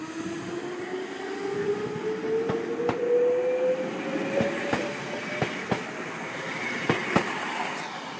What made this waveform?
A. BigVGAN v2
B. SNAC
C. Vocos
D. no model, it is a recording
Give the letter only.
D